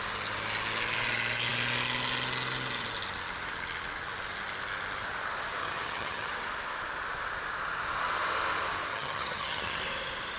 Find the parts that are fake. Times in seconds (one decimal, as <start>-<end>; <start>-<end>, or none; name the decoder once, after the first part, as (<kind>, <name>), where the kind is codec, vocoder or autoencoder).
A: 5.6-6.3 (vocoder, HiFi-GAN); 8.9-9.8